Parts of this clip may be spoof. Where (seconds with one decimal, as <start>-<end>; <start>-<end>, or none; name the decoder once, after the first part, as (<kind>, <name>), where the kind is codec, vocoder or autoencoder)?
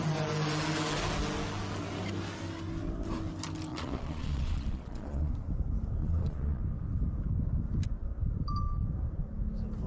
3.7-5.3 (vocoder, Vocos); 6.0-6.6